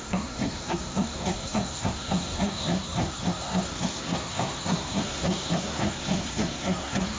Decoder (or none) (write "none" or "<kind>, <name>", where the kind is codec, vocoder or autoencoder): codec, SNAC